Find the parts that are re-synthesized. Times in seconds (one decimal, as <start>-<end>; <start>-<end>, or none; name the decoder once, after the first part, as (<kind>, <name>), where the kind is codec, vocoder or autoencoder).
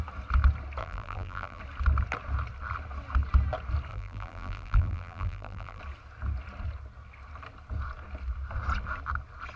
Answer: 0.8-1.6 (vocoder, BigVGAN v2); 3.9-5.8